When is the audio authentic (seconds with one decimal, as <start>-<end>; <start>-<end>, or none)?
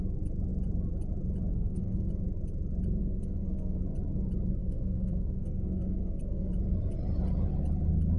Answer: 0.0-1.5; 2.1-3.0; 3.8-4.6; 6.5-8.2